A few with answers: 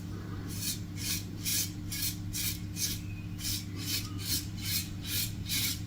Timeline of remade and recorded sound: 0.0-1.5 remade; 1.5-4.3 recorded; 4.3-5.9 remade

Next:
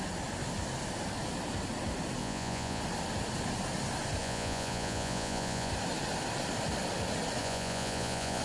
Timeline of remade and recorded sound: 0.0-2.2 recorded; 2.2-2.8 remade; 2.8-4.2 recorded; 4.2-5.7 remade; 5.7-7.4 recorded; 7.4-8.4 remade

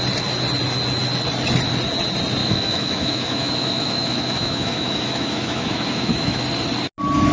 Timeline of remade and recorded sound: 0.0-2.4 recorded; 2.4-6.4 remade; 6.4-7.3 recorded

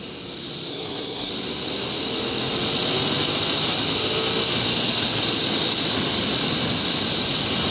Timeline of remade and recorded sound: 0.0-0.7 recorded; 0.7-1.3 remade; 1.3-7.7 recorded

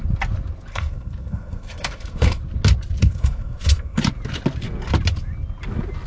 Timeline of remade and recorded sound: 0.0-0.7 recorded; 0.7-2.4 remade; 2.4-3.0 recorded; 3.0-4.0 remade; 4.0-6.1 recorded